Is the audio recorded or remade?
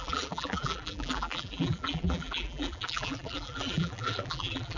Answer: remade